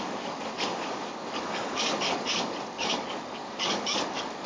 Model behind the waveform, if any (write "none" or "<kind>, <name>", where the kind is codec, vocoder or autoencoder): codec, DAC